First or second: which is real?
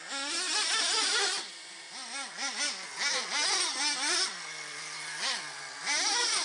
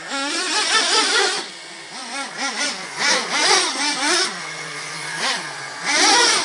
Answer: first